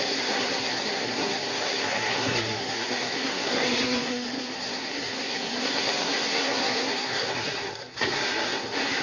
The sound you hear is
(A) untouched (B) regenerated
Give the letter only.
B